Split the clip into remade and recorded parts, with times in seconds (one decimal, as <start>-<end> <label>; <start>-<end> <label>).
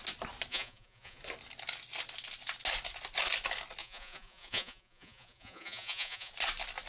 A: 0.0-0.5 recorded; 0.5-1.2 remade; 1.2-3.8 recorded; 3.8-6.3 remade; 6.3-6.9 recorded